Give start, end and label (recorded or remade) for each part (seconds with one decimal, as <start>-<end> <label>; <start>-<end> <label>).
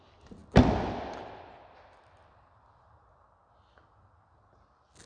0.0-5.1 recorded